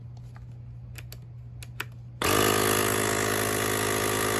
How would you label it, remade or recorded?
recorded